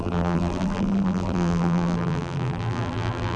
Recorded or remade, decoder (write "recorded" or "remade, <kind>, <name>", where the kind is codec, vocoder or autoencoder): remade, vocoder, BigVGAN v2